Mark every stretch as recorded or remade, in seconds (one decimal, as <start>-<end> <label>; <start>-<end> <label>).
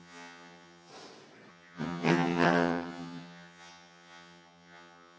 0.0-0.9 remade; 0.9-1.5 recorded; 1.5-5.2 remade